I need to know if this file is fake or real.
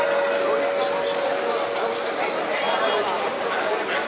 real